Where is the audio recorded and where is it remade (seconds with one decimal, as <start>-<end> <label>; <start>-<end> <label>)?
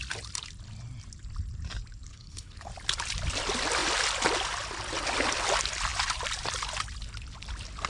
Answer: 0.0-2.1 recorded; 2.1-2.7 remade; 2.7-7.9 recorded